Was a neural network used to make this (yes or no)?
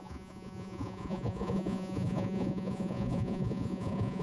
yes